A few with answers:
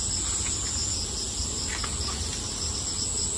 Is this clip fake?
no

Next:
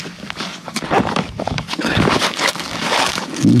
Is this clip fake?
yes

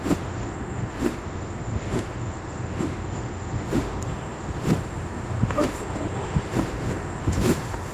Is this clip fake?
yes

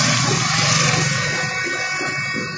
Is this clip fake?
no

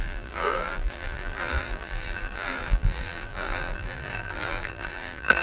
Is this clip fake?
yes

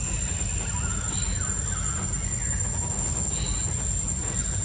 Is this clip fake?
no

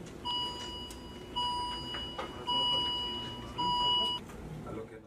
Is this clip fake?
no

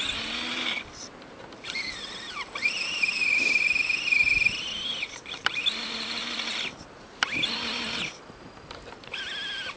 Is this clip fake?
no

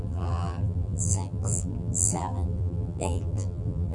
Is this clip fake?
yes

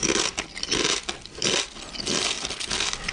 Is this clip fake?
no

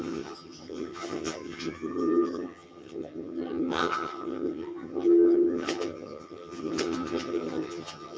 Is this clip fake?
yes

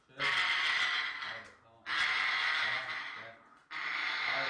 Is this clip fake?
no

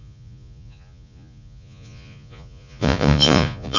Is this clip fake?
yes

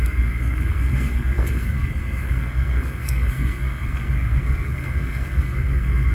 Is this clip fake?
yes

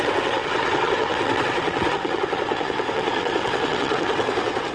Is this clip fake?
yes